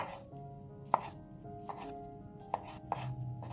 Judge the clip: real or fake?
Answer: real